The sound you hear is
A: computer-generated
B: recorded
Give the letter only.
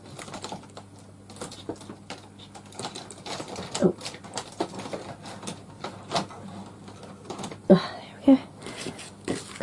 B